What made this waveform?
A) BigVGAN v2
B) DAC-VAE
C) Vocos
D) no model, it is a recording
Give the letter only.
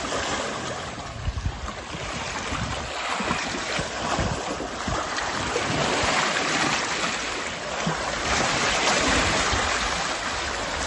D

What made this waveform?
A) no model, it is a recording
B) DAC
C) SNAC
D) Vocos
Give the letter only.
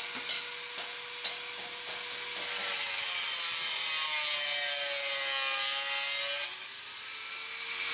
A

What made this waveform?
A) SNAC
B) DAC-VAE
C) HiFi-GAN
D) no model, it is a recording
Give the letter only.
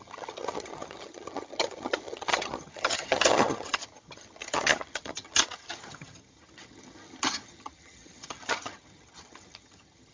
C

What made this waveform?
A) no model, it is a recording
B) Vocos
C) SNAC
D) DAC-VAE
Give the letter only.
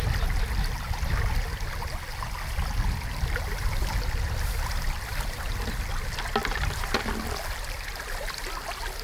A